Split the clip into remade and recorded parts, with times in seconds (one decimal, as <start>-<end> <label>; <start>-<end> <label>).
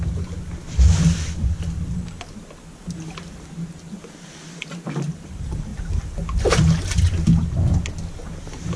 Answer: 0.0-8.8 recorded